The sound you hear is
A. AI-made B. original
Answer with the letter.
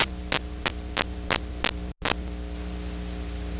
B